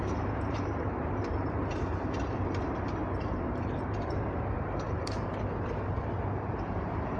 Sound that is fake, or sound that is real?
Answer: fake